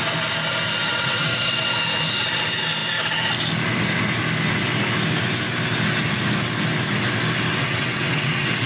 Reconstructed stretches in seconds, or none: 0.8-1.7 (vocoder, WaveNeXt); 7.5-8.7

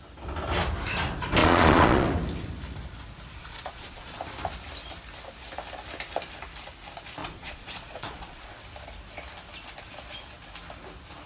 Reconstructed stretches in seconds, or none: 1.4-2.1 (vocoder, Vocos); 3.4-4.2; 7.2-8.6

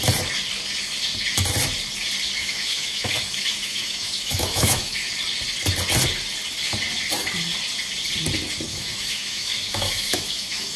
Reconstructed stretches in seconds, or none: 2.4-5.1 (autoencoder, DAC-VAE); 8.7-10.8

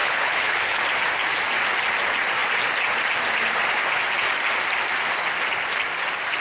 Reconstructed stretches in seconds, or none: 0.0-0.8 (codec, HILCodec)